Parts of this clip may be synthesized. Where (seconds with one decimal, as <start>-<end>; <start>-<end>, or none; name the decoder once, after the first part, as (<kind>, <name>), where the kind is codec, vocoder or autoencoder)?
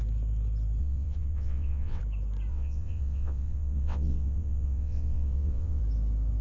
0.8-2.0 (vocoder, WaveNeXt); 2.5-5.8